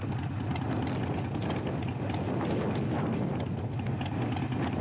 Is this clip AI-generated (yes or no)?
no